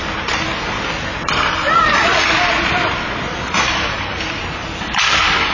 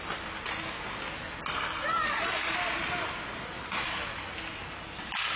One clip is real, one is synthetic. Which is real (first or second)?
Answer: second